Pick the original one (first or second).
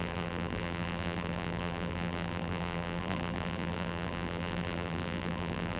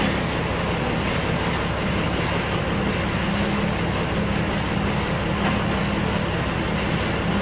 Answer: second